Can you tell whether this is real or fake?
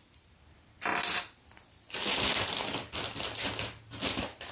real